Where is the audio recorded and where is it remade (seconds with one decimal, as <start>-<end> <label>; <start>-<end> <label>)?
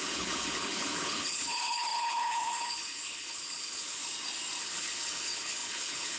0.0-4.0 remade; 4.0-4.6 recorded; 4.6-6.2 remade